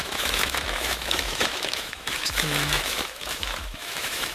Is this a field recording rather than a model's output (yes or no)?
no